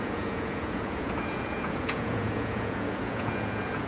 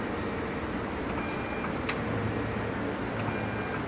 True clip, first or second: second